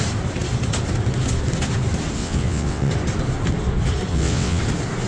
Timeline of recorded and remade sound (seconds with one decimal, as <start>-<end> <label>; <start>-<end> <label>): 0.0-2.2 recorded; 2.2-2.9 remade; 2.9-4.1 recorded; 4.1-4.6 remade; 4.6-5.1 recorded

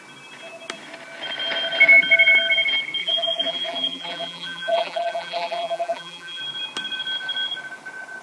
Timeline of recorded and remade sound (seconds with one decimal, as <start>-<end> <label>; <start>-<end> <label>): 0.0-3.0 recorded; 3.0-6.4 remade; 6.4-8.2 recorded

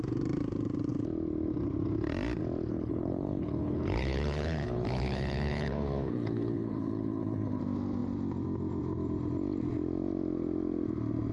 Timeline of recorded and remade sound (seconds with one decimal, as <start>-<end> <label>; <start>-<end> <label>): 0.0-2.7 recorded; 2.7-7.6 remade; 7.6-11.3 recorded

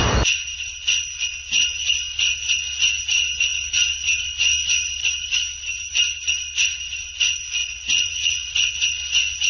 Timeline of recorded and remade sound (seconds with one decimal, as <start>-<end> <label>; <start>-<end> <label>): 0.0-7.6 recorded; 7.6-8.7 remade; 8.7-9.5 recorded